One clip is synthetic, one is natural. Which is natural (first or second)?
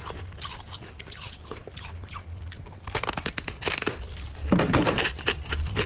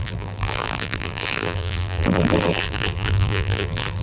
first